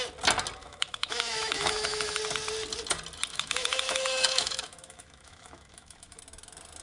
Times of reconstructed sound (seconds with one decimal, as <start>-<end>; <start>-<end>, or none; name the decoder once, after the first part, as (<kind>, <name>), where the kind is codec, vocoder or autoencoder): 0.6-2.2 (autoencoder, DAC-VAE); 3.3-6.2